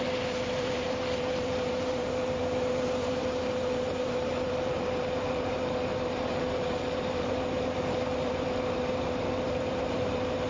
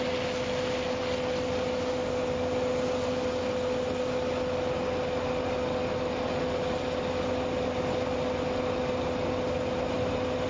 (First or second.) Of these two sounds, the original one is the second